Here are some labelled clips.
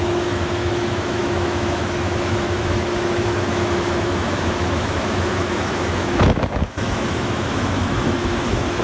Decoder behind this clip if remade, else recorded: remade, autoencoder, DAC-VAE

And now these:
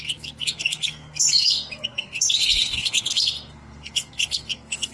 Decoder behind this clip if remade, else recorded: remade, codec, SNAC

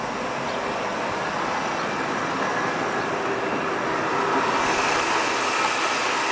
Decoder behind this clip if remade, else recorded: recorded